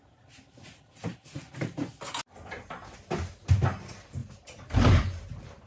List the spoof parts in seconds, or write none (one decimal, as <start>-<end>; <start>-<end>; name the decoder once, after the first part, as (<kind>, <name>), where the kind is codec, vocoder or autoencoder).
1.1-1.9 (vocoder, BigVGAN v2); 4.2-5.7